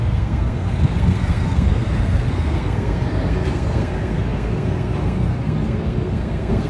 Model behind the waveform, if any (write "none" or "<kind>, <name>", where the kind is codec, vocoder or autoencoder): codec, SNAC